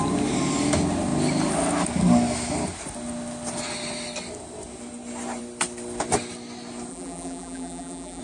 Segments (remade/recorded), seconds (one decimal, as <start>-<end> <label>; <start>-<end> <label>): 0.0-6.9 recorded; 6.9-8.2 remade